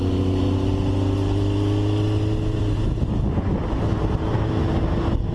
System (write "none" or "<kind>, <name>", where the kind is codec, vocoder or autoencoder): none